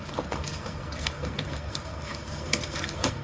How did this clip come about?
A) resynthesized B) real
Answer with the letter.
A